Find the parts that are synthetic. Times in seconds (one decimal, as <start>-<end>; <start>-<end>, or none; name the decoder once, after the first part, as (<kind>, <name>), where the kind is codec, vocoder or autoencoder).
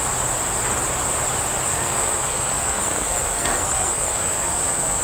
1.7-5.0 (codec, SNAC)